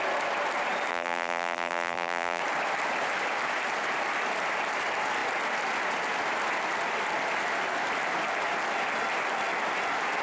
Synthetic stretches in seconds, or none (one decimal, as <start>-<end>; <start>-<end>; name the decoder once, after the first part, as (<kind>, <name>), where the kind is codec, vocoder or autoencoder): 0.9-2.4 (vocoder, BigVGAN v2)